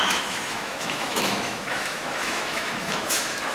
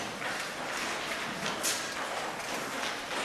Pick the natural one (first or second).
second